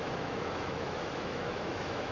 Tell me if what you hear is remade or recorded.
remade